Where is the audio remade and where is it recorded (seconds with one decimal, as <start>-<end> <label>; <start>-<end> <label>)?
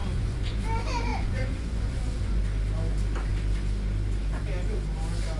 0.0-0.6 remade; 0.6-1.1 recorded; 1.1-2.4 remade; 2.4-5.4 recorded